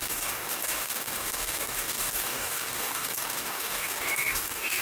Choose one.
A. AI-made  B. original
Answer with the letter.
A